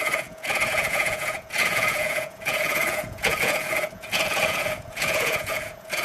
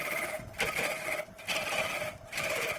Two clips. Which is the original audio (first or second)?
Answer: second